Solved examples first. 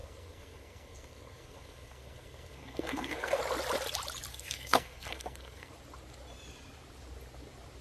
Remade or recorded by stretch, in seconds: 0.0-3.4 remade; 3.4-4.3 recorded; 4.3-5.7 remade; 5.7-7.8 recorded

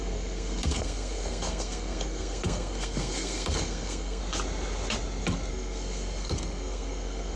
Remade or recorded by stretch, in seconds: 0.0-4.2 remade; 4.2-5.5 recorded; 5.5-7.4 remade

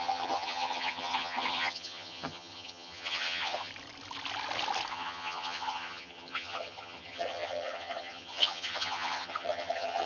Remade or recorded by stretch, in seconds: 0.0-3.7 remade; 3.7-4.9 recorded; 4.9-10.1 remade

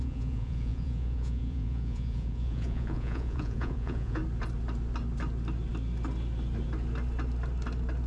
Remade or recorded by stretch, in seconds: 0.0-4.2 remade; 4.2-8.1 recorded

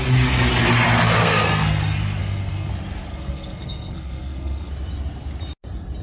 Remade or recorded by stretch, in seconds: 0.0-1.2 recorded; 1.2-1.8 remade; 1.8-2.2 recorded; 2.2-2.7 remade; 2.7-3.1 recorded; 3.1-4.7 remade; 4.7-6.0 recorded

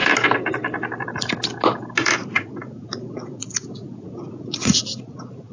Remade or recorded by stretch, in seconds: 0.0-2.2 recorded; 2.2-5.5 remade

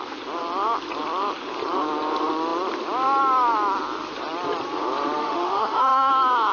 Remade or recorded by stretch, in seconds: 0.0-5.2 recorded; 5.2-6.1 remade; 6.1-6.5 recorded